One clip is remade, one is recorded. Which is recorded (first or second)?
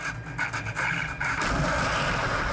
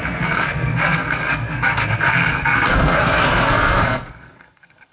first